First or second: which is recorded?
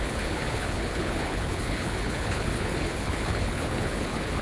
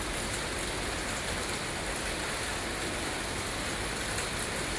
second